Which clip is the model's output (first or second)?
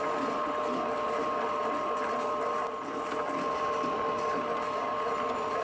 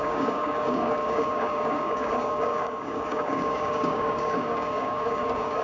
second